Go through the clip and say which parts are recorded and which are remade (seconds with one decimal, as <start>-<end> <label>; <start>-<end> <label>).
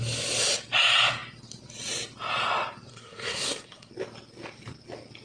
0.0-2.9 recorded; 2.9-3.9 remade; 3.9-5.2 recorded